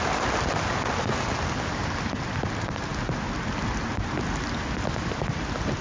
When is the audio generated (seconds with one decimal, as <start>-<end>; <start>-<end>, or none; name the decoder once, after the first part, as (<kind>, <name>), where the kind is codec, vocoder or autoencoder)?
none